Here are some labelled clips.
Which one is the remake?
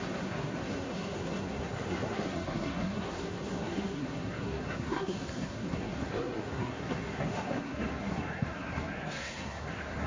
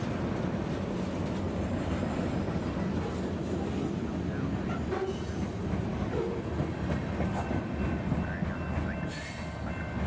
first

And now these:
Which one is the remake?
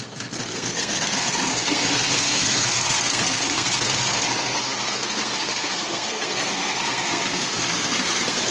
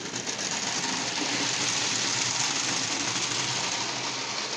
first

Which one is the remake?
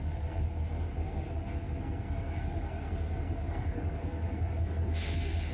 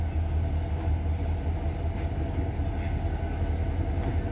first